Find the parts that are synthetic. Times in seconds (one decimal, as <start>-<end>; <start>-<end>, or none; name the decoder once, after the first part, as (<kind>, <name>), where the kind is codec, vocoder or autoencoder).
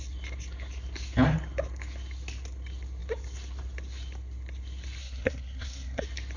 5.0-6.0 (codec, SNAC)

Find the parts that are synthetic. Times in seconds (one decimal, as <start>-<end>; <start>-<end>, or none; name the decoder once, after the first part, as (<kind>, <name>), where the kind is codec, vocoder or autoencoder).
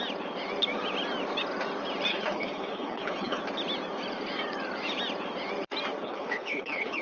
2.1-3.4 (codec, HILCodec); 6.0-7.0